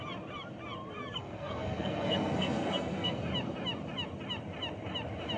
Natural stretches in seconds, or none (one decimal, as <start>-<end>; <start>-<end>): 0.0-1.2; 3.2-5.4